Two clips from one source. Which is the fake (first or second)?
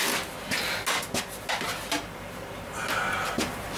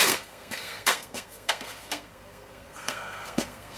second